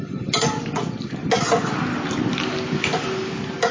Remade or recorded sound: recorded